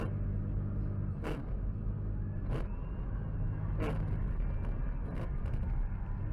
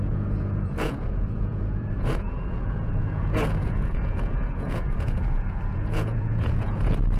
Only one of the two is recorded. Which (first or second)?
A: first